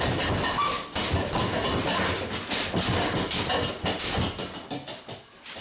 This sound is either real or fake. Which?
real